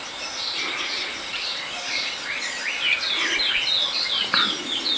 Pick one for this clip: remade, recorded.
remade